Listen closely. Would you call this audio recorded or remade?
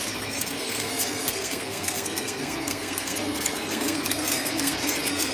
remade